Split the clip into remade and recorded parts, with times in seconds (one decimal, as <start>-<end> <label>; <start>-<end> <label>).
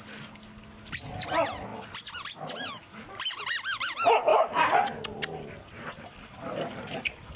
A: 0.0-7.4 recorded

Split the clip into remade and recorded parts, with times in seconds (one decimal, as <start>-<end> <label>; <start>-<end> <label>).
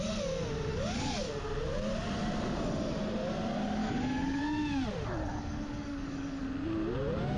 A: 0.0-0.7 recorded; 0.7-1.3 remade; 1.3-3.8 recorded; 3.8-4.4 remade; 4.4-5.3 recorded; 5.3-6.4 remade; 6.4-7.4 recorded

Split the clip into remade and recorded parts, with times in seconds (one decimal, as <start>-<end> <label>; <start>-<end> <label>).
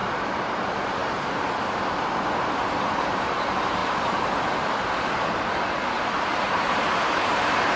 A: 0.0-7.8 remade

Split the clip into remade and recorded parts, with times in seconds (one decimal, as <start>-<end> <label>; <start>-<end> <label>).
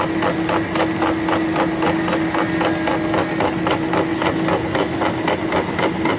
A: 0.0-6.2 recorded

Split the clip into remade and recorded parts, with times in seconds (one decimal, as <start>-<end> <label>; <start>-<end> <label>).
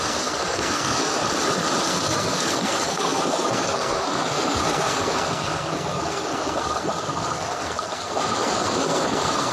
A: 0.0-1.2 remade; 1.2-1.8 recorded; 1.8-9.5 remade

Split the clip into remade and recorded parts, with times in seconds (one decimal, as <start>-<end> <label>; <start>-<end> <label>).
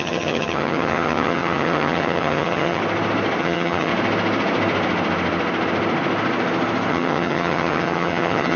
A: 0.0-2.8 remade; 2.8-3.4 recorded; 3.4-3.9 remade; 3.9-6.9 recorded; 6.9-8.6 remade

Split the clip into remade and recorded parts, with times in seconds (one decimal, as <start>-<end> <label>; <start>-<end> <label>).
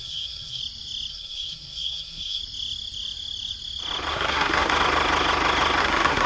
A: 0.0-0.6 remade; 0.6-1.1 recorded; 1.1-2.4 remade; 2.4-4.1 recorded; 4.1-4.7 remade; 4.7-5.8 recorded; 5.8-6.3 remade